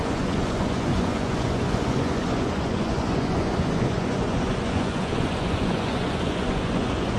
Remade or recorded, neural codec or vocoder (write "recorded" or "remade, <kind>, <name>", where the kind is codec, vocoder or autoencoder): remade, vocoder, Vocos